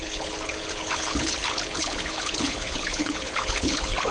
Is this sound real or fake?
fake